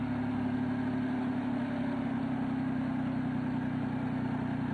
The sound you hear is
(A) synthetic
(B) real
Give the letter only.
B